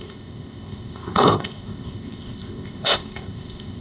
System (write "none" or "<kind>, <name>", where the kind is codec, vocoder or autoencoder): codec, ZipCodec